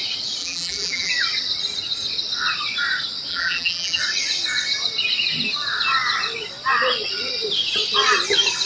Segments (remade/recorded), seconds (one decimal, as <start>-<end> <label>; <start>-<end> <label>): 0.0-0.4 recorded; 0.4-1.1 remade; 1.1-3.3 recorded; 3.3-4.0 remade; 4.0-8.7 recorded